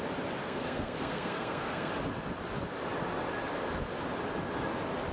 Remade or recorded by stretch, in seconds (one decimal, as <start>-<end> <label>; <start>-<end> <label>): 0.0-0.4 recorded; 0.4-1.9 remade; 1.9-5.1 recorded